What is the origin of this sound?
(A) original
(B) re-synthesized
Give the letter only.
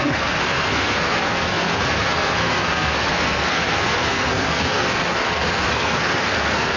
B